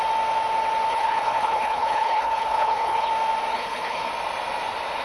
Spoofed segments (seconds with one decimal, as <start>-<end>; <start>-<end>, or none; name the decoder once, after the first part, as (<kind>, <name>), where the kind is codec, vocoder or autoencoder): 0.9-3.1 (codec, HILCodec); 3.5-4.1